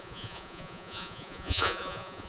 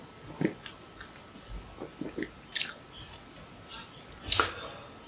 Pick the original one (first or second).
second